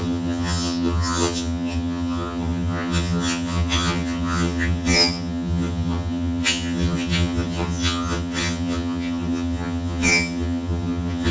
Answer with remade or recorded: remade